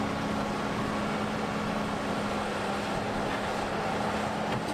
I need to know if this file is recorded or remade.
recorded